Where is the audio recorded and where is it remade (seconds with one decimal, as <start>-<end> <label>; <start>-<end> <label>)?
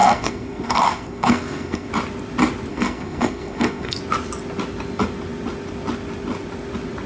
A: 0.0-1.9 remade; 1.9-2.7 recorded; 2.7-4.0 remade; 4.0-7.1 recorded